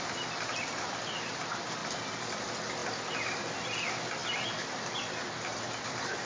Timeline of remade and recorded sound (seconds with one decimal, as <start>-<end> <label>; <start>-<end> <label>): 0.0-6.3 recorded